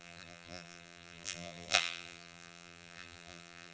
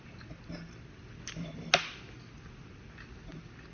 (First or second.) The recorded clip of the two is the second